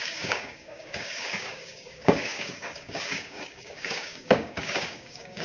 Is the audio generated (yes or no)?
yes